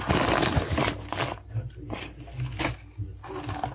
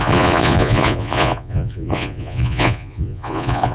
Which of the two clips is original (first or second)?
first